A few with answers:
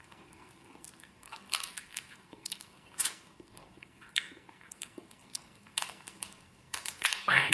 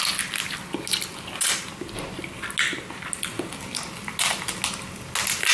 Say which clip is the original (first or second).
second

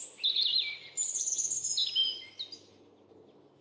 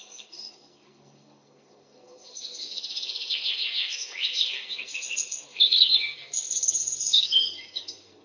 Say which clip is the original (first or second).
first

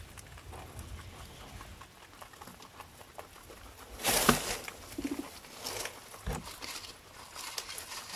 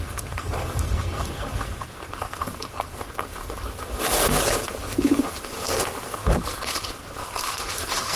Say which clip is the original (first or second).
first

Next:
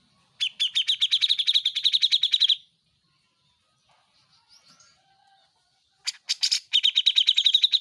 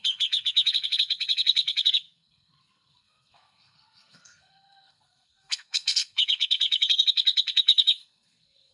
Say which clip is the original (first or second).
first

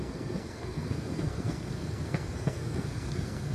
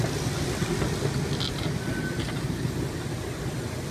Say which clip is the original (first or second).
second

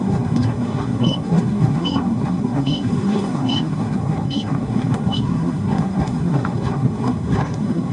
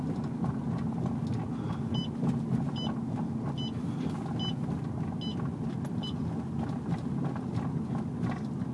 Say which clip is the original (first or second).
second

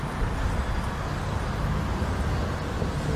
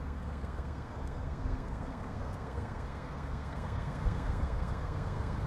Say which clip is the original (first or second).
first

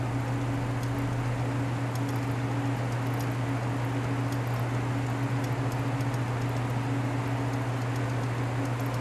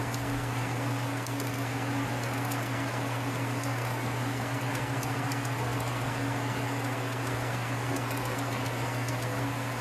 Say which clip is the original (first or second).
first